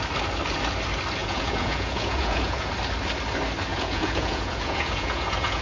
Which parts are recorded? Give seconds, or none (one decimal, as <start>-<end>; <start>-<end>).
0.0-1.2; 2.7-3.7